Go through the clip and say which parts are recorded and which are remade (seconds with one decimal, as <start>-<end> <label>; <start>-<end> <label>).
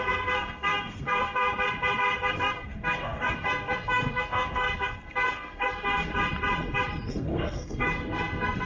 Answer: 0.0-1.4 remade; 1.4-2.3 recorded; 2.3-6.1 remade; 6.1-7.1 recorded; 7.1-8.7 remade